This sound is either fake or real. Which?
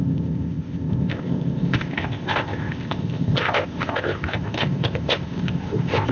fake